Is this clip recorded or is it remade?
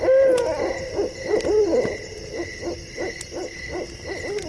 recorded